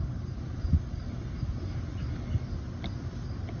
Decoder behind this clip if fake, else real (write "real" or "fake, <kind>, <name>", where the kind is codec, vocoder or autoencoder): real